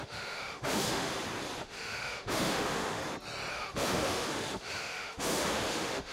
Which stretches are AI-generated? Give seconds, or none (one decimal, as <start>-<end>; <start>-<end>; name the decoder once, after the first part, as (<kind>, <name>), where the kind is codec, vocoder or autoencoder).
0.0-1.1 (autoencoder, DAC-VAE); 1.6-3.0; 3.5-6.1